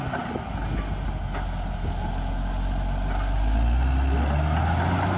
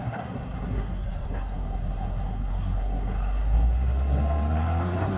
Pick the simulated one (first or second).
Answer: second